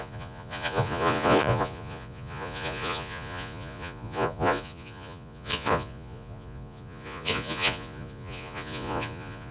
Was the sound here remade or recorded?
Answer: remade